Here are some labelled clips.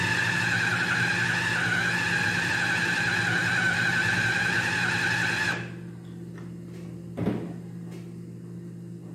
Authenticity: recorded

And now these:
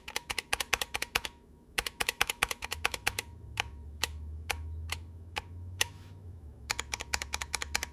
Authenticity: remade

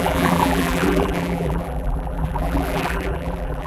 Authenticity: remade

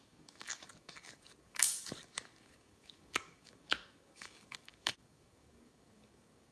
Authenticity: remade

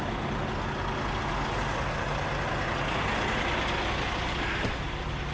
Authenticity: recorded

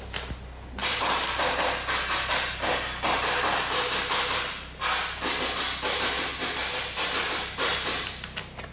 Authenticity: recorded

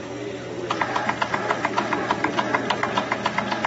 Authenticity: remade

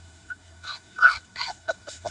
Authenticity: remade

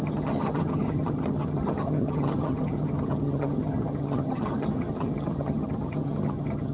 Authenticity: remade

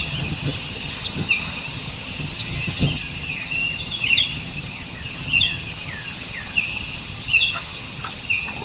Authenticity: remade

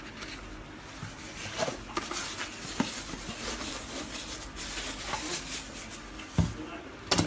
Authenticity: recorded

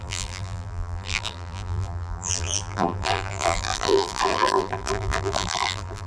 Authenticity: remade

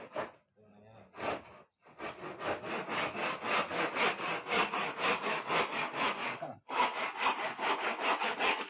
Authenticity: recorded